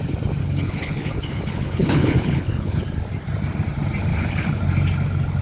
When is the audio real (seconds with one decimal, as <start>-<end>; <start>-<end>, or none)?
0.0-0.4; 2.8-4.1; 4.6-5.4